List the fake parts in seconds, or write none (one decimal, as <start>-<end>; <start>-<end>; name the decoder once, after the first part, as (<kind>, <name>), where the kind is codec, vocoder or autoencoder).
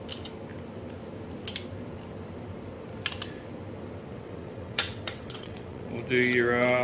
4.1-5.9 (vocoder, WaveNeXt)